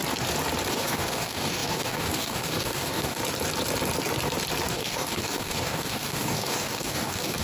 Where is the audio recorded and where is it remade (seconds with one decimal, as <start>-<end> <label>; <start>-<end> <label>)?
0.0-0.7 recorded; 0.7-3.2 remade; 3.2-4.7 recorded; 4.7-7.4 remade